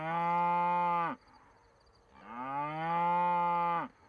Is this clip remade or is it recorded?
recorded